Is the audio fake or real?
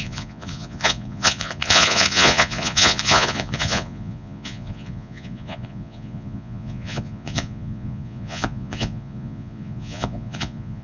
fake